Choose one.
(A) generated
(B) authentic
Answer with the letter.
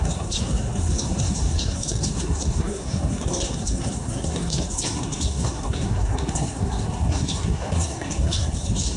A